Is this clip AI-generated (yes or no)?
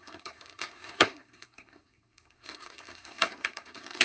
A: yes